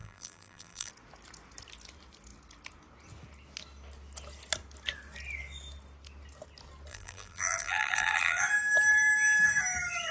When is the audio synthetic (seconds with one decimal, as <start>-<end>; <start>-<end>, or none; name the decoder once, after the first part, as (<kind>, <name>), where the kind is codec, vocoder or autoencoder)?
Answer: 0.0-0.9 (vocoder, BigVGAN v2); 6.9-8.4